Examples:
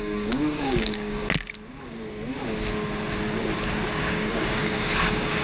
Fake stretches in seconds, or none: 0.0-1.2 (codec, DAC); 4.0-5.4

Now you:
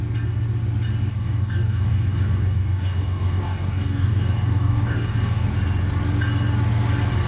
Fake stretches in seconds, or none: 1.1-5.5 (codec, DAC)

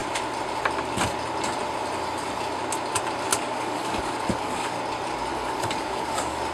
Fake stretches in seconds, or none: 3.3-4.8 (codec, DAC); 5.3-6.5

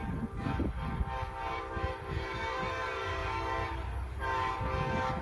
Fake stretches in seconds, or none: 0.0-5.2 (codec, DAC)

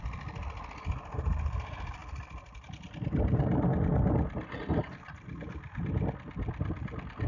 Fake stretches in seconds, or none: none

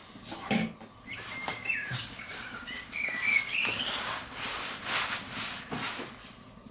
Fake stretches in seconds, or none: 1.5-4.4 (codec, DAC)

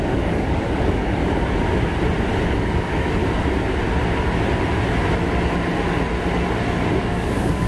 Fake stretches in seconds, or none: 0.0-1.2 (codec, DAC); 2.4-3.2; 7.0-7.7